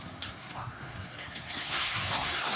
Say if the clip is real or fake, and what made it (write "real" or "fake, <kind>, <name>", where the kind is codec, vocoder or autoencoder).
fake, codec, SNAC